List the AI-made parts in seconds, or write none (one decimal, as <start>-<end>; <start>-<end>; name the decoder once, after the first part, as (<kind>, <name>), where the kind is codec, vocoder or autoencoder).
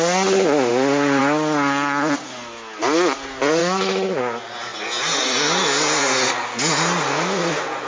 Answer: 3.6-4.2 (autoencoder, DAC-VAE)